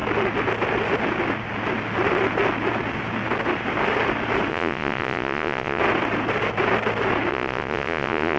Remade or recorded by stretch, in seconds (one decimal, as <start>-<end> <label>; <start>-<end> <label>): 0.0-4.5 recorded; 4.5-5.8 remade; 5.8-7.3 recorded; 7.3-8.4 remade